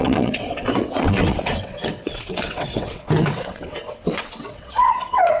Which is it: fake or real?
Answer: fake